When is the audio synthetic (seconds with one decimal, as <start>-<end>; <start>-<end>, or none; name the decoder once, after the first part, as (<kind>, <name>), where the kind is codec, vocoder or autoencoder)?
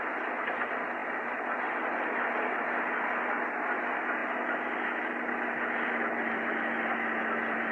none